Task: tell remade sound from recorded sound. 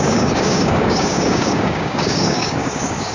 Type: remade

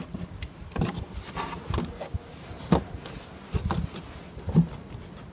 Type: recorded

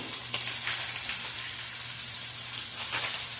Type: recorded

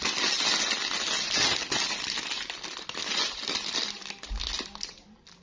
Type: recorded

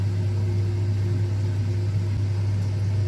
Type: recorded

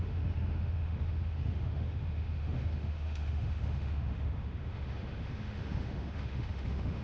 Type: remade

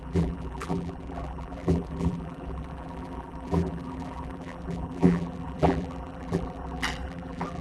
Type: remade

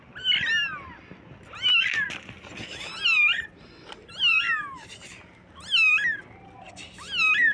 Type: recorded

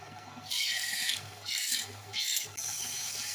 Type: remade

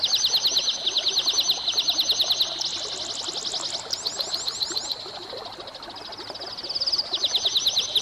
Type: recorded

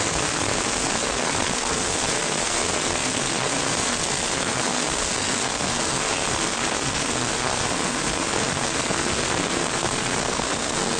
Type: remade